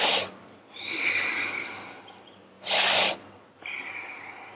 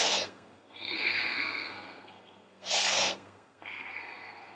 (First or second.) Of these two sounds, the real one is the first